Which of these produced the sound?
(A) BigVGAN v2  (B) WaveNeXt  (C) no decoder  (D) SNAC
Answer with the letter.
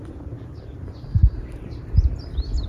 A